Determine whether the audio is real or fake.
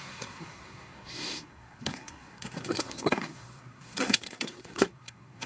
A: fake